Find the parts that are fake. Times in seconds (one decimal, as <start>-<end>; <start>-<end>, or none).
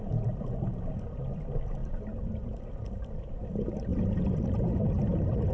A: 1.8-2.6; 3.9-5.5